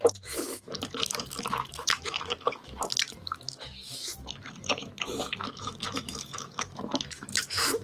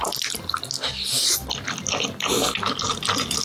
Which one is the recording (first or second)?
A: second